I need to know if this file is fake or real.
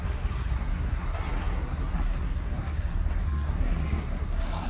fake